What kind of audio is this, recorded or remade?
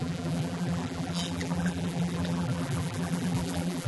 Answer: remade